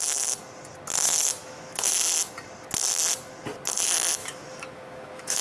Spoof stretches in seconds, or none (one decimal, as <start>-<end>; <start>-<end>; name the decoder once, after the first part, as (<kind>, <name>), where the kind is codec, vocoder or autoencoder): 0.9-1.9 (autoencoder, DAC-VAE); 4.2-5.4